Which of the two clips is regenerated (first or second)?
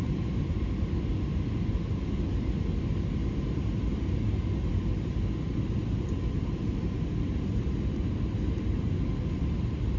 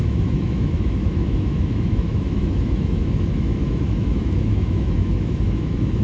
second